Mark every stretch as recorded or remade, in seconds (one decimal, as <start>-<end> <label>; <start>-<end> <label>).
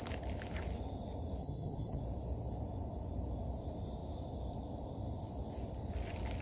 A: 0.0-1.4 recorded; 1.4-2.0 remade; 2.0-6.4 recorded